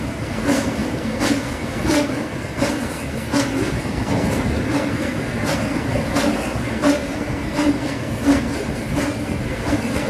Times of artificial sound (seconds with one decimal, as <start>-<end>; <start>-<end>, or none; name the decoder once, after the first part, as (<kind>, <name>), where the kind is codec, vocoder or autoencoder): 0.0-10.1 (codec, SNAC)